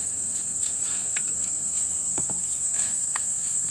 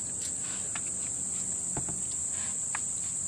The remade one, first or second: first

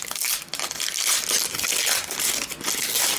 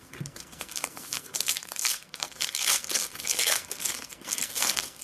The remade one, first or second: second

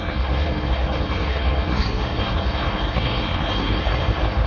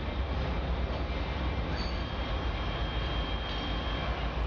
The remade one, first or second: first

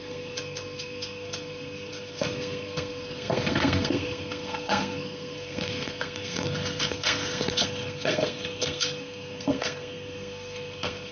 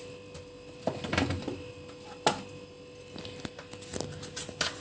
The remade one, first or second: first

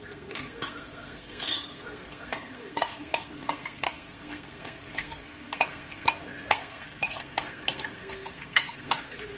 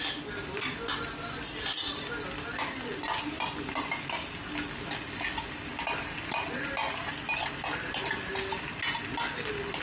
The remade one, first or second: first